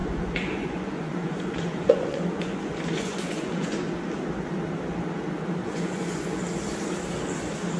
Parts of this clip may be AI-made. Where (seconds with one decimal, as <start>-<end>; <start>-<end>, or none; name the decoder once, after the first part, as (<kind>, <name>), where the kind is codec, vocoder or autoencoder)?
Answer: 0.0-3.9 (vocoder, Vocos); 5.6-6.4